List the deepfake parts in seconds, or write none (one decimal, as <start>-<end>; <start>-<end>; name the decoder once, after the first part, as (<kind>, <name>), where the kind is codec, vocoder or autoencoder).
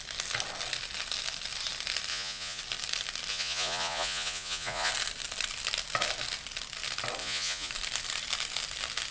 2.1-2.6 (vocoder, Vocos); 3.3-4.9; 7.2-7.7